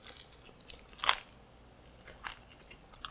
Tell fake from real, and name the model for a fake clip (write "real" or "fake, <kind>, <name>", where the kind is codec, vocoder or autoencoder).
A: real